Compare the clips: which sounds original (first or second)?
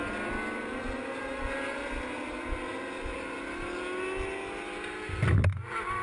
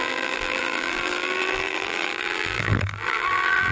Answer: first